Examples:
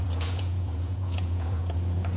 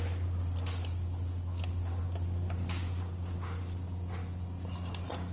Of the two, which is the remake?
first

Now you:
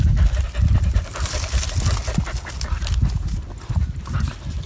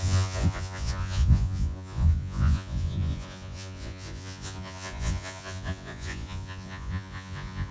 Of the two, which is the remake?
second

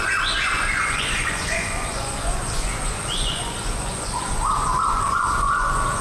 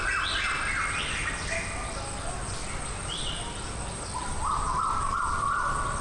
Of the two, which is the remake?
first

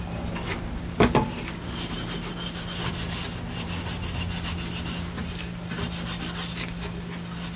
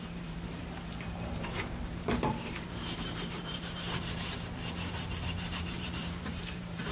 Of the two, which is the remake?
second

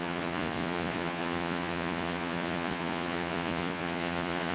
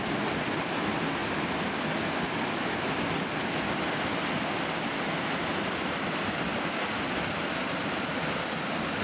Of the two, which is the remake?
first